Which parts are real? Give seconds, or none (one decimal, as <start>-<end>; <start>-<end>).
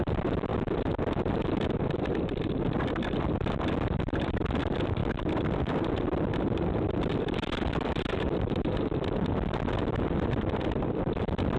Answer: 0.5-2.0; 5.0-5.8; 6.3-7.2